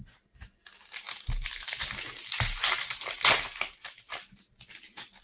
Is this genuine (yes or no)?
yes